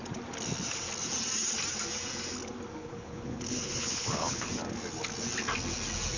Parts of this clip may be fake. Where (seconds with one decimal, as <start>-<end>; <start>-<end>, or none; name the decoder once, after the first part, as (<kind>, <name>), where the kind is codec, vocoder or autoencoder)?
2.8-4.5 (codec, HILCodec)